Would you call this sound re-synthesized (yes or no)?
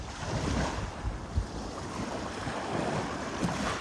no